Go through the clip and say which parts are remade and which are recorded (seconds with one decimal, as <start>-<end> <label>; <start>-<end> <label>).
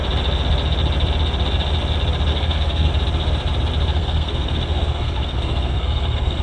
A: 0.0-2.3 recorded; 2.3-2.9 remade; 2.9-3.9 recorded; 3.9-6.4 remade